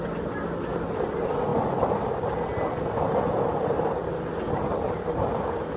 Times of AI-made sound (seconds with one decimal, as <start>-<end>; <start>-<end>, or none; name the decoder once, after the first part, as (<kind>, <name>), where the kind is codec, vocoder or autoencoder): none